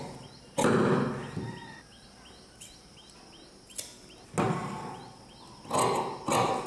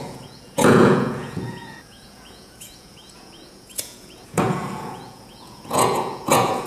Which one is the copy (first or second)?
second